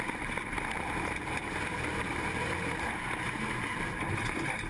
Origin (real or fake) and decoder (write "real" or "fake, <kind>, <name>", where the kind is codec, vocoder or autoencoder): fake, vocoder, BigVGAN v2